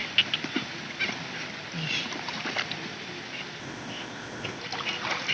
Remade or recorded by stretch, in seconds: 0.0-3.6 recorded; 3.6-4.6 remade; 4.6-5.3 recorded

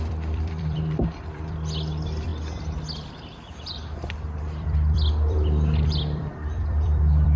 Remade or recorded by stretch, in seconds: 0.0-2.3 remade; 2.3-3.6 recorded; 3.6-7.4 remade

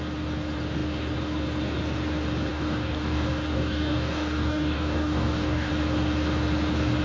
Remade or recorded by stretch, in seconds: 0.0-2.5 recorded; 2.5-5.7 remade; 5.7-7.0 recorded

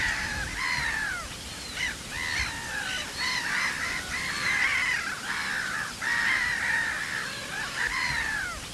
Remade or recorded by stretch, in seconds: 0.0-8.7 recorded

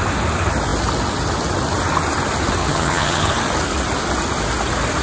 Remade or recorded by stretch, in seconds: 0.0-2.6 recorded; 2.6-3.3 remade; 3.3-5.0 recorded

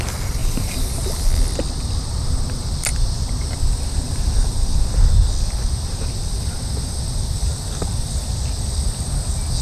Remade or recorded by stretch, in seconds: 0.0-0.4 recorded; 0.4-1.1 remade; 1.1-9.6 recorded

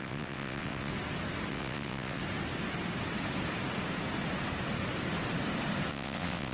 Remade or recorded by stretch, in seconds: 0.0-0.9 remade; 0.9-1.5 recorded; 1.5-2.2 remade; 2.2-5.9 recorded; 5.9-6.5 remade